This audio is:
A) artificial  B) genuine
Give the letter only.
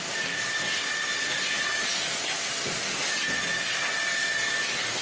B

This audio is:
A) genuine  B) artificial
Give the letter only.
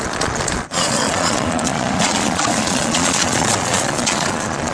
B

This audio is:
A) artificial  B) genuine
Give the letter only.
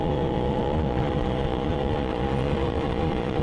A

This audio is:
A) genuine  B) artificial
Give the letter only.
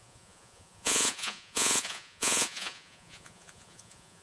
B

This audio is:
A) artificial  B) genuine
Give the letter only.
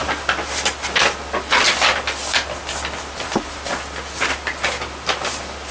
B